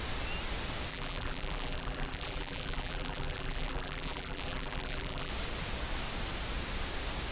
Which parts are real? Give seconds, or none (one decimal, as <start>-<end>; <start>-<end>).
0.0-0.9; 5.3-7.3